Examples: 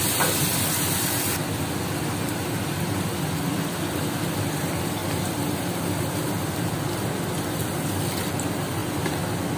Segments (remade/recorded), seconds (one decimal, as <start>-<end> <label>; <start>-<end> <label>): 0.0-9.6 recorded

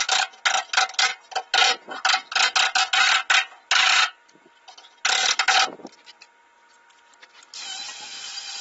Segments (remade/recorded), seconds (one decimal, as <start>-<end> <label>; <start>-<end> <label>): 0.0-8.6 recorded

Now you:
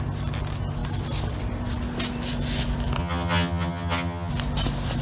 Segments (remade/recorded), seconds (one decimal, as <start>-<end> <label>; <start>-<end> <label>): 0.0-3.0 recorded; 3.0-4.3 remade; 4.3-5.0 recorded